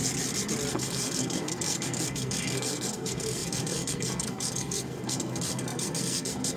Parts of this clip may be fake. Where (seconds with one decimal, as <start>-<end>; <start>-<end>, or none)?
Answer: 0.7-6.6